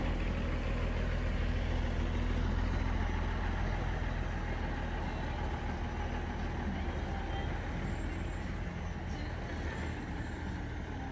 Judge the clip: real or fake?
real